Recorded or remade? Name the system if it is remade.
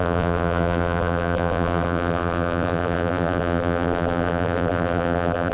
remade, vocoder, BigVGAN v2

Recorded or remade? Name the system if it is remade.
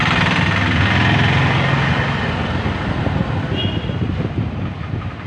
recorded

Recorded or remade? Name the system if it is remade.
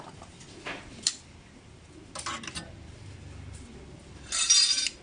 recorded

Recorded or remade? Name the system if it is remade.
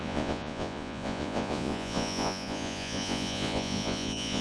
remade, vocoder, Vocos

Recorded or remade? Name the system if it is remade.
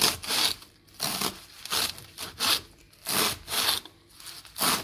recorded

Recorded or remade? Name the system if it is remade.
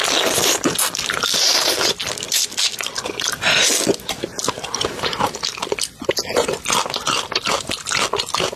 recorded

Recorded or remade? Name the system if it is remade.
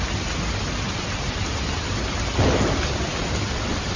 recorded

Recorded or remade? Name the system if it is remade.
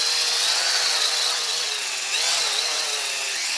remade, vocoder, WaveNeXt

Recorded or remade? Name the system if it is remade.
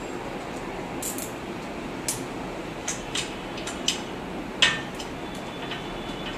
recorded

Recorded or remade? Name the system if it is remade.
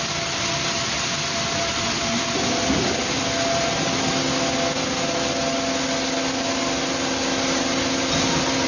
recorded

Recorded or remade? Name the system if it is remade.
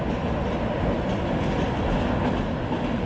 recorded